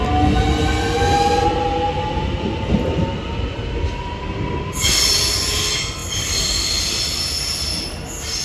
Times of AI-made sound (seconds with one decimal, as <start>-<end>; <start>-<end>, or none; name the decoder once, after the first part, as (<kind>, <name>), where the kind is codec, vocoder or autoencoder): none